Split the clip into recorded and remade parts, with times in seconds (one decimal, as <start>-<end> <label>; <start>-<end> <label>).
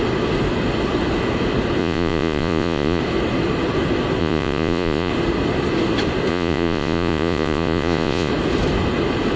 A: 0.0-1.8 recorded; 1.8-3.0 remade; 3.0-4.2 recorded; 4.2-5.1 remade; 5.1-6.3 recorded; 6.3-8.3 remade; 8.3-9.4 recorded